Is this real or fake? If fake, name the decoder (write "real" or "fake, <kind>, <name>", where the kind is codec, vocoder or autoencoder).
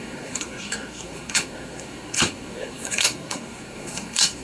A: fake, codec, SNAC